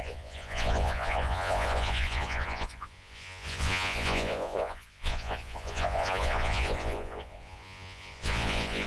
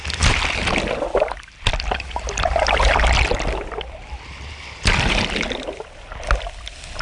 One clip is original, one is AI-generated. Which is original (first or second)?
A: second